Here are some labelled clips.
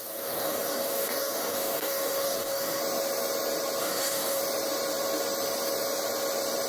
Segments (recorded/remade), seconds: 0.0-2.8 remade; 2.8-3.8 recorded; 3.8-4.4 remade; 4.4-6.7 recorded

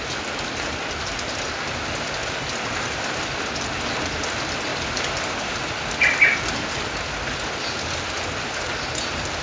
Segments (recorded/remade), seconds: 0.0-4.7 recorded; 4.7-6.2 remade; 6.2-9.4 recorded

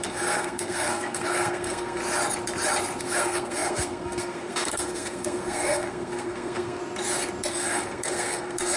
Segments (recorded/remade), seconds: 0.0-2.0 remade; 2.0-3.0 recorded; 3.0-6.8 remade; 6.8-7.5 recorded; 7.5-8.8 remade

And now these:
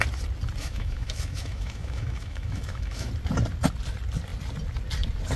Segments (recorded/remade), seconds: 0.0-0.6 recorded; 0.6-3.1 remade; 3.1-5.4 recorded

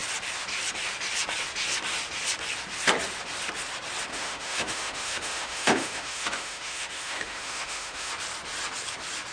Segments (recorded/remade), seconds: 0.0-4.1 recorded; 4.1-8.1 remade; 8.1-9.3 recorded

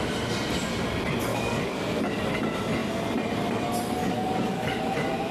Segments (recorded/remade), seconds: 0.0-1.3 recorded; 1.3-2.0 remade; 2.0-4.0 recorded; 4.0-4.8 remade; 4.8-5.3 recorded

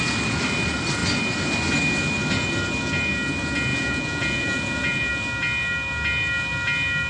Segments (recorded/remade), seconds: 0.0-3.7 recorded; 3.7-5.1 remade; 5.1-7.1 recorded